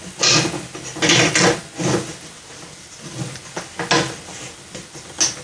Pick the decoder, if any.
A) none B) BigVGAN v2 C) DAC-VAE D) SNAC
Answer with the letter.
A